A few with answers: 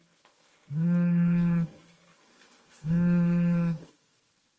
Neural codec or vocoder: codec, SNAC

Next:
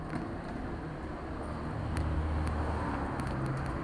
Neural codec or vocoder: none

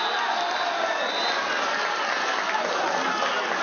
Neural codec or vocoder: none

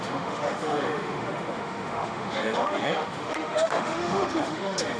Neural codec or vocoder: autoencoder, DAC-VAE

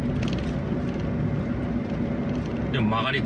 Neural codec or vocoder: none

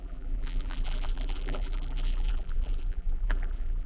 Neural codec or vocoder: vocoder, BigVGAN v2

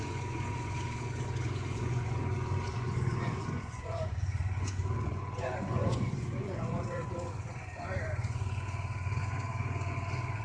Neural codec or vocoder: vocoder, Vocos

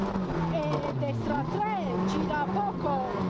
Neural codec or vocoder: none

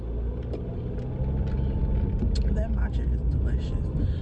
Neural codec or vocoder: none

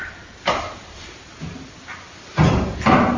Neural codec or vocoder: none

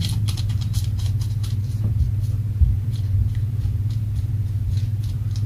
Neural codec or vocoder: vocoder, BigVGAN v2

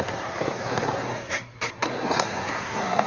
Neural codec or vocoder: codec, SNAC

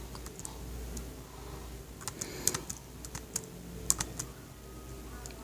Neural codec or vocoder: none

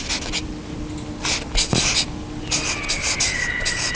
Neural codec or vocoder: none